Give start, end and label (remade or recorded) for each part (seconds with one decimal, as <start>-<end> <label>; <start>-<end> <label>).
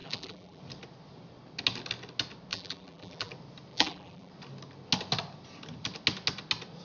0.0-0.6 remade; 0.6-2.5 recorded; 2.5-3.3 remade; 3.3-3.7 recorded; 3.7-4.3 remade; 4.3-6.8 recorded